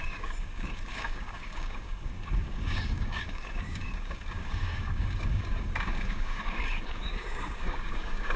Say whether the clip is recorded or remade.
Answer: remade